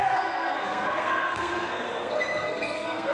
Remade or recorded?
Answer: remade